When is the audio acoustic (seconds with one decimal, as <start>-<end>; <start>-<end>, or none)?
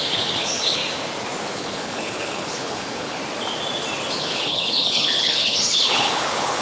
0.8-1.5; 3.2-4.1